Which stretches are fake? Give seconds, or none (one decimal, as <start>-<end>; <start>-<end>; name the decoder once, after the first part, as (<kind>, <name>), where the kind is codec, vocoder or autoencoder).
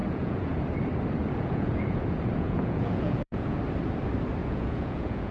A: 0.0-0.6 (vocoder, Vocos); 1.2-3.6; 4.4-5.3